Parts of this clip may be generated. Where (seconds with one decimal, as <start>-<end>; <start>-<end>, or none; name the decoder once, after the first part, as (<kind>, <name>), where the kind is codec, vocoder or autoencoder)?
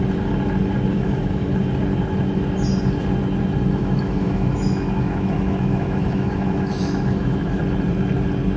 0.9-1.5 (autoencoder, DAC-VAE); 3.8-7.6